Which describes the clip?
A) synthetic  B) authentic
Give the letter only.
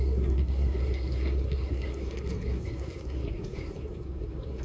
A